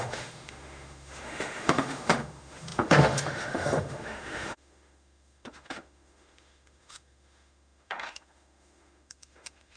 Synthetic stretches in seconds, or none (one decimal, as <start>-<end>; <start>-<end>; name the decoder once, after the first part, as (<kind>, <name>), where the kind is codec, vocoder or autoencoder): 0.0-9.8 (autoencoder, DAC-VAE)

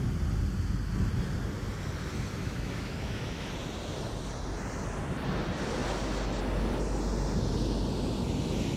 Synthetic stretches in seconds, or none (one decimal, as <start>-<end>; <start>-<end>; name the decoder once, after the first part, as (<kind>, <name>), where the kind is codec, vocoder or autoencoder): 2.4-3.5 (autoencoder, DAC-VAE)

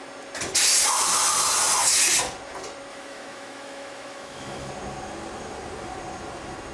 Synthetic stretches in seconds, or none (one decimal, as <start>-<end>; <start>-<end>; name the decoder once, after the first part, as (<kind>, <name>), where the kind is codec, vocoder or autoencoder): 2.9-4.7 (autoencoder, DAC-VAE)

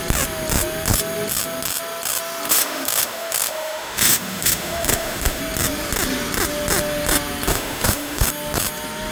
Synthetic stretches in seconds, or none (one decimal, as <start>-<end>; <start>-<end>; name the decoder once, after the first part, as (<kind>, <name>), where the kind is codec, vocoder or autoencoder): 2.5-5.4 (autoencoder, DAC-VAE); 7.5-8.3

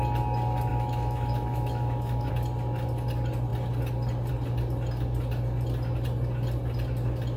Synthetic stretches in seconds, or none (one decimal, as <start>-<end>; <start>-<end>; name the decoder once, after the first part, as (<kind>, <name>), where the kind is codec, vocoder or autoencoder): 0.7-2.3 (autoencoder, DAC-VAE)

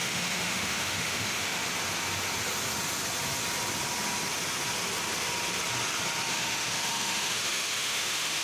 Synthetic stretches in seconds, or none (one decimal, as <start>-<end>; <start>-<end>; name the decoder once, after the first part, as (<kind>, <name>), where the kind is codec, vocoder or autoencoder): 0.0-1.6 (autoencoder, DAC-VAE); 6.3-8.4